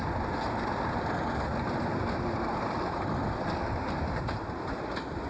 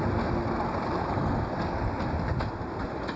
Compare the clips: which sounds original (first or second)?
second